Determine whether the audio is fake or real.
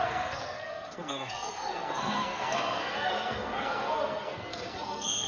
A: fake